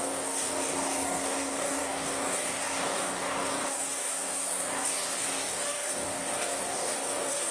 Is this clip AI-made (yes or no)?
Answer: yes